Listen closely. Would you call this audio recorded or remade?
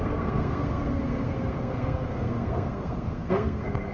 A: remade